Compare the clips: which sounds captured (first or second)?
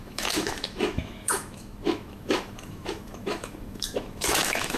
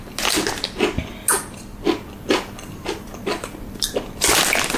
second